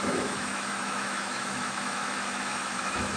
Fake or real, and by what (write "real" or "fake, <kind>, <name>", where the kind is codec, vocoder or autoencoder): fake, autoencoder, DAC-VAE